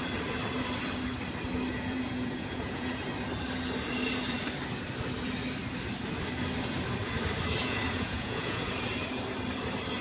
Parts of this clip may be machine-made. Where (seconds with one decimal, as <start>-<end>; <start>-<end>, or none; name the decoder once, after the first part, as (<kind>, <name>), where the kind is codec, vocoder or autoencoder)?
1.7-3.1 (vocoder, Vocos); 7.6-8.7